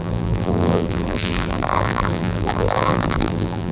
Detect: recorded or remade remade